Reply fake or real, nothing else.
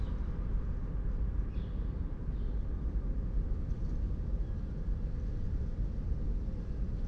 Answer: real